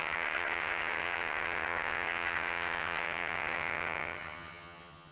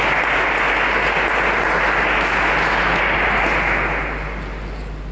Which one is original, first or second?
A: second